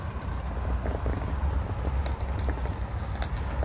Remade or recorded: recorded